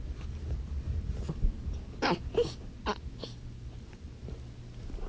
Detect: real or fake real